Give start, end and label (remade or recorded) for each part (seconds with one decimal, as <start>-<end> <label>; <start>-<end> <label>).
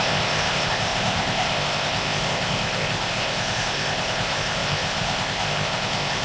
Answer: 0.0-6.2 remade